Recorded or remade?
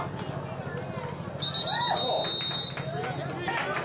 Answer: recorded